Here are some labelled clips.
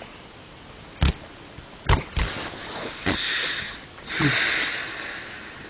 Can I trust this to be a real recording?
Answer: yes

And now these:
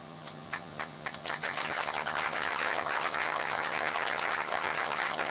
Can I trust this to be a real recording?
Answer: no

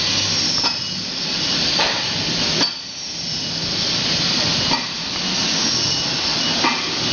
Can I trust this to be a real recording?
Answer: yes